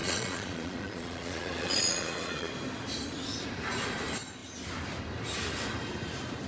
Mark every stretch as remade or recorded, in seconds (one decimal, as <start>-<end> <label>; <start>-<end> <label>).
0.0-2.5 remade; 2.5-6.5 recorded